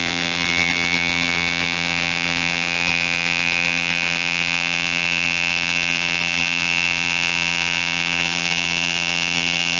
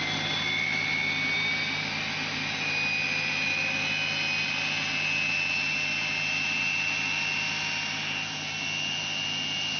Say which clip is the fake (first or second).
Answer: first